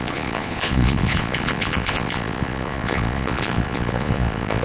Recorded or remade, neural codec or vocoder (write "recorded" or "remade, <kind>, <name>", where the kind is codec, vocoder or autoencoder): remade, vocoder, Vocos